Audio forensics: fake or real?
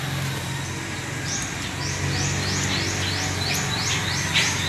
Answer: real